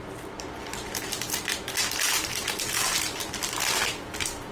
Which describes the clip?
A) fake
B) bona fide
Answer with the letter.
B